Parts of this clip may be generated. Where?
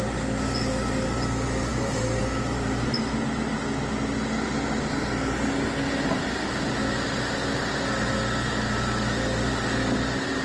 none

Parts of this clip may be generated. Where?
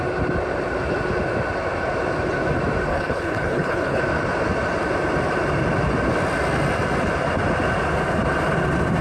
2.9-4.0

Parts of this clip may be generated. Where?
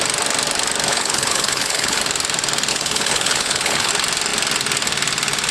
0.9-2.0; 2.7-3.9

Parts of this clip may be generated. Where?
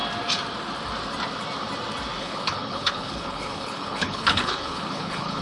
2.2-5.4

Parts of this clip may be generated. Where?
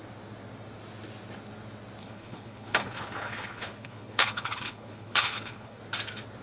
2.0-5.8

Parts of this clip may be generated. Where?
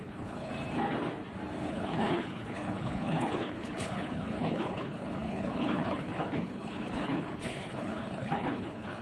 0.0-0.5; 1.7-9.0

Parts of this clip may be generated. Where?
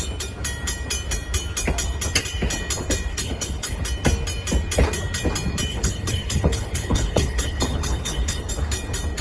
3.1-3.8; 5.7-8.5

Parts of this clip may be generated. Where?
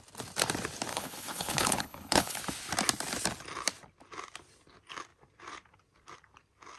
0.9-2.4